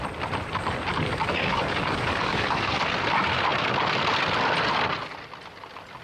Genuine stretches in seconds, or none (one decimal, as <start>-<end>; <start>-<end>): 0.0-0.9; 2.8-6.0